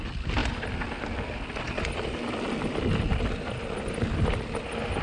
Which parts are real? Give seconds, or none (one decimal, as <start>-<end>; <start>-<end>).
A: 0.0-5.0